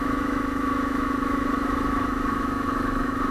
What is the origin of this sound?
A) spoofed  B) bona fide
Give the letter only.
A